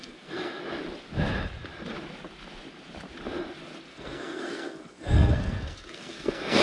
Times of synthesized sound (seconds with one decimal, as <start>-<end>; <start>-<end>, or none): 0.0-0.6; 3.9-6.6